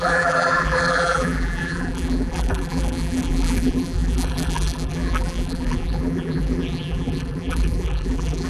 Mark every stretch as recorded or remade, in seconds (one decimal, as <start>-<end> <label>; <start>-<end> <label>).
0.0-8.5 remade